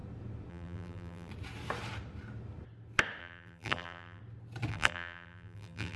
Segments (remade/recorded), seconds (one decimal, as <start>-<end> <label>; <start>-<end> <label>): 0.0-0.5 recorded; 0.5-1.3 remade; 1.3-3.2 recorded; 3.2-4.2 remade; 4.2-4.7 recorded; 4.7-6.0 remade